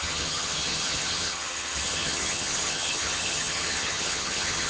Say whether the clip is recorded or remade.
remade